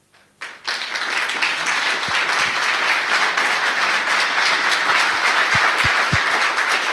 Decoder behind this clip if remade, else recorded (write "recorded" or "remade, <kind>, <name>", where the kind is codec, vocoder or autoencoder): recorded